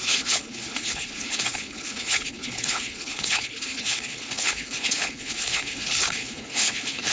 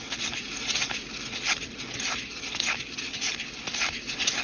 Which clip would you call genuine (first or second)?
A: second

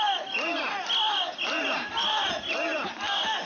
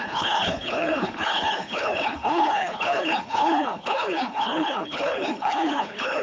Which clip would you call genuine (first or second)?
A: first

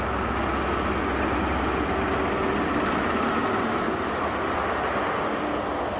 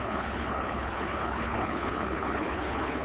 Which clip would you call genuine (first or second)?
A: first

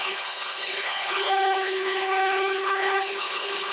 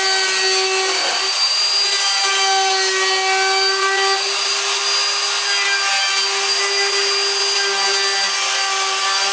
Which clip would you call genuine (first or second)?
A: second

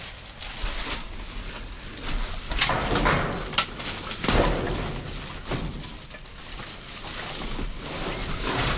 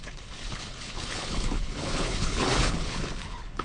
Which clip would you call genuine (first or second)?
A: first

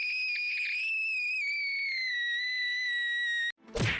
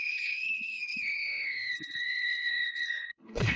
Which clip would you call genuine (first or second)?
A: first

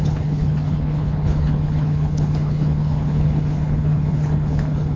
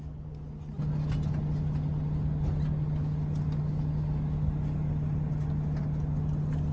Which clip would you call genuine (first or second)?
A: second